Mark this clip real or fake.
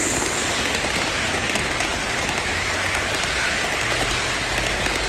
real